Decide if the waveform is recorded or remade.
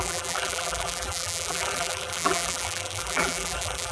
remade